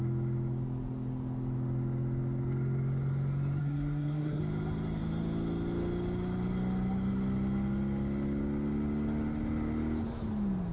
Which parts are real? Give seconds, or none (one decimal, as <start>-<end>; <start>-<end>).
0.0-3.6; 4.4-10.7